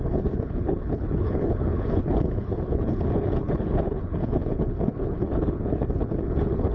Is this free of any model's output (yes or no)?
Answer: no